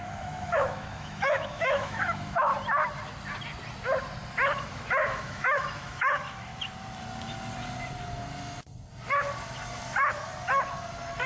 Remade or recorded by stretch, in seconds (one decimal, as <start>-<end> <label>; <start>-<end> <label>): 0.0-2.5 remade; 2.5-4.6 recorded; 4.6-6.5 remade; 6.5-11.3 recorded